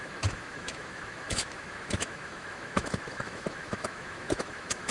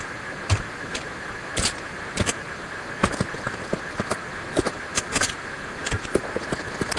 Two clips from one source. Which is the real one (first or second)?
second